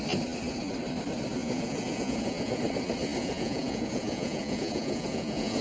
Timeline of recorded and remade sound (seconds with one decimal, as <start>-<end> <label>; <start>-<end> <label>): 0.0-1.4 recorded; 1.4-2.6 remade; 2.6-3.2 recorded; 3.2-5.6 remade